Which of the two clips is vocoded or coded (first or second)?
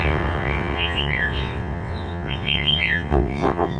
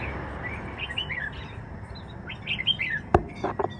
first